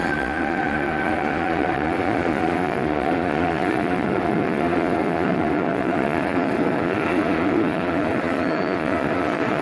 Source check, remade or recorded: remade